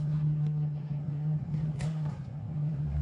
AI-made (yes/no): yes